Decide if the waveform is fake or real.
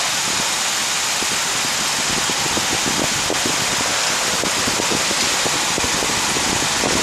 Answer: real